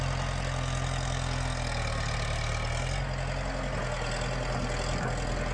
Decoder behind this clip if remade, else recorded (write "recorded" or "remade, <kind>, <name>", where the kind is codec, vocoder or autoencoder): recorded